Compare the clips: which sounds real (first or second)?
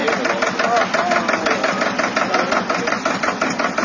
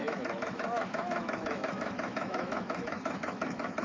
first